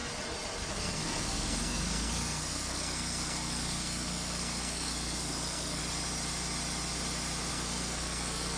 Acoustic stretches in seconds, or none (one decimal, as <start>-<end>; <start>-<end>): 0.0-0.7; 5.8-7.5